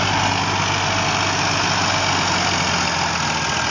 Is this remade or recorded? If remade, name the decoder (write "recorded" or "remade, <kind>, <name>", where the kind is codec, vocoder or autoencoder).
recorded